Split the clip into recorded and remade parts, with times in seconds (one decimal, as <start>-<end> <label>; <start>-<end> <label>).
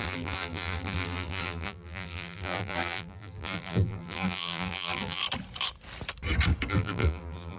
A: 0.0-5.2 remade; 5.2-6.7 recorded; 6.7-7.6 remade